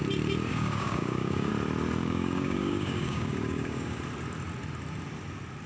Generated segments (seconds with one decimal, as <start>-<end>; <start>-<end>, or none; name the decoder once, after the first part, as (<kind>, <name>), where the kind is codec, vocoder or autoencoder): 0.5-1.5 (codec, DAC); 2.0-4.0